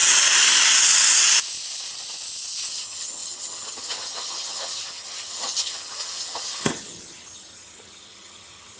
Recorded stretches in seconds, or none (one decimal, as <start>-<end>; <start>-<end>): 0.0-2.7